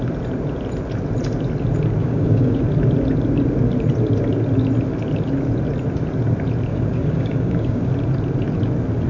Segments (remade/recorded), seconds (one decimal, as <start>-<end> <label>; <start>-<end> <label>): 0.0-2.0 recorded; 2.0-2.6 remade; 2.6-6.7 recorded; 6.7-7.9 remade; 7.9-9.1 recorded